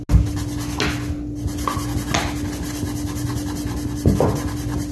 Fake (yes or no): no